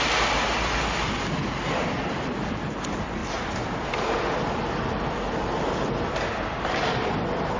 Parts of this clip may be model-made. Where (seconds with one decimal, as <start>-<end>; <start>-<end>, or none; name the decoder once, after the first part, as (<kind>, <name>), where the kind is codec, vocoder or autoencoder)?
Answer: none

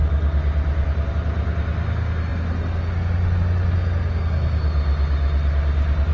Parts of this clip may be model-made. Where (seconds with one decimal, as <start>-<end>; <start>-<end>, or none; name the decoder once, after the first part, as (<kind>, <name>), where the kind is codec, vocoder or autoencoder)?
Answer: none